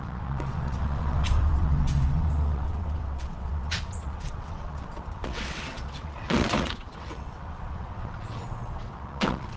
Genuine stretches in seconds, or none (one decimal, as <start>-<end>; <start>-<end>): none